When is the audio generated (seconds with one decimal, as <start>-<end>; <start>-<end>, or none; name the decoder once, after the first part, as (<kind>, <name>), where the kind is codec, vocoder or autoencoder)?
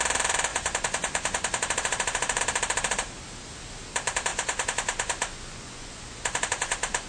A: 0.5-2.4 (vocoder, Vocos); 4.3-7.1